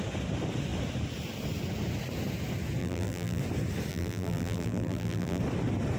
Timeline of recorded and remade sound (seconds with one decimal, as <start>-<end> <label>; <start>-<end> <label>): 0.0-2.8 recorded; 2.8-3.4 remade; 3.4-3.9 recorded; 3.9-5.4 remade; 5.4-6.0 recorded